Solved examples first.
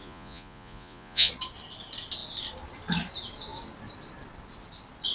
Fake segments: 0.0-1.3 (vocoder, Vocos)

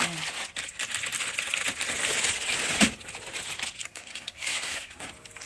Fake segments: 3.8-5.1 (codec, SNAC)

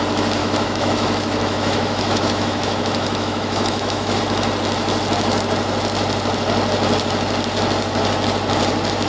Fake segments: 0.4-4.2 (autoencoder, DAC-VAE)